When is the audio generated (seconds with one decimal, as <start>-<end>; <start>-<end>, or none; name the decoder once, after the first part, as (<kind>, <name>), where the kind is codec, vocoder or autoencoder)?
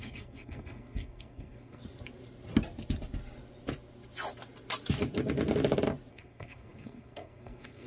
0.0-1.8 (codec, SNAC); 6.1-7.9